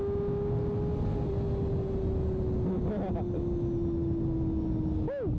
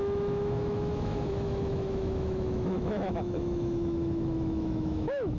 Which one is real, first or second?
first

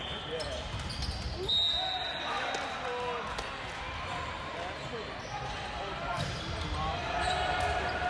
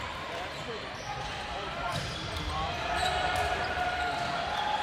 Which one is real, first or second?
first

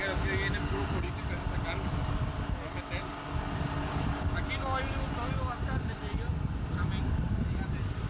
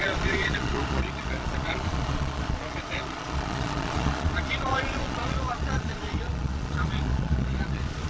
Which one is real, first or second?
first